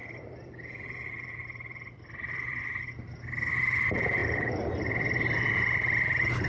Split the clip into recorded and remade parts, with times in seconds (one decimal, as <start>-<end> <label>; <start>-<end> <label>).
0.0-2.6 remade; 2.6-4.2 recorded; 4.2-6.5 remade